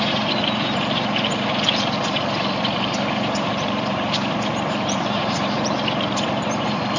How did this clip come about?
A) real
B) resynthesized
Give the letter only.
B